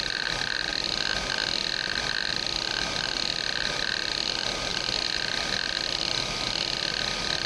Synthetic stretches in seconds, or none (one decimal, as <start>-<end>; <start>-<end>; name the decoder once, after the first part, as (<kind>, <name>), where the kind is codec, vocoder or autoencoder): 0.0-0.7 (vocoder, BigVGAN v2); 2.3-7.5